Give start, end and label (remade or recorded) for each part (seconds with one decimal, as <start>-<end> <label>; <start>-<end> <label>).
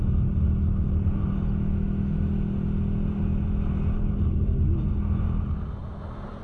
0.0-6.4 recorded